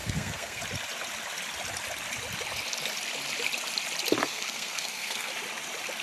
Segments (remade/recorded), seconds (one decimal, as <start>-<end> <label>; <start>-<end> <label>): 0.0-0.6 remade; 0.6-4.2 recorded; 4.2-5.3 remade; 5.3-6.0 recorded